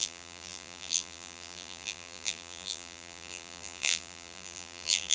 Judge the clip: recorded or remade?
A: remade